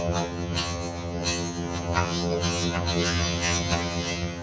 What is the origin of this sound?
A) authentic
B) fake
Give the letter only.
B